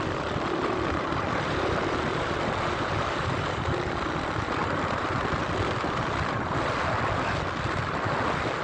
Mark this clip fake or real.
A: real